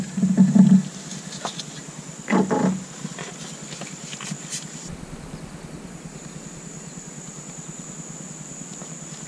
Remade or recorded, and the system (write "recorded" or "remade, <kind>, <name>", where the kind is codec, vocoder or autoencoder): recorded